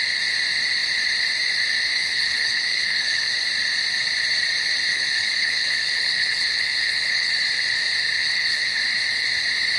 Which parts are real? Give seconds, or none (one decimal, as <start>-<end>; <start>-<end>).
0.0-1.9; 3.3-4.9; 7.3-8.2; 8.8-9.8